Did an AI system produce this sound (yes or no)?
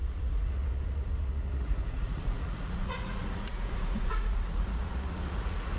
yes